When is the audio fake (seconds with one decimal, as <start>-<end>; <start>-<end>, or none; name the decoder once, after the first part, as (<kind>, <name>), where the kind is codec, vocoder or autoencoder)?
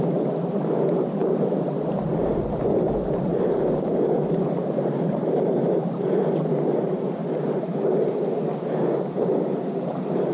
1.2-2.0 (vocoder, BigVGAN v2)